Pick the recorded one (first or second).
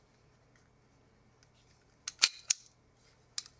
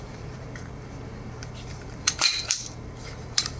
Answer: first